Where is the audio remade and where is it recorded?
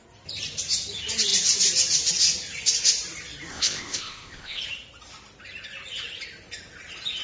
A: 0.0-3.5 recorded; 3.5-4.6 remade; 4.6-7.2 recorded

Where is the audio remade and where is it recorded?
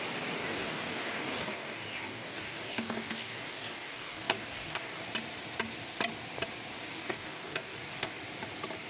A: 0.0-0.4 recorded; 0.4-5.0 remade; 5.0-6.7 recorded; 6.7-8.2 remade; 8.2-8.9 recorded